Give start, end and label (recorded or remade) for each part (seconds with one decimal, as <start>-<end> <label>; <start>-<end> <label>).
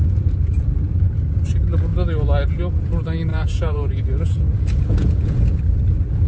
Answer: 0.0-3.3 recorded; 3.3-5.6 remade; 5.6-6.3 recorded